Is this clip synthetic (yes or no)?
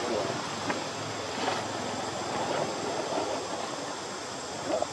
no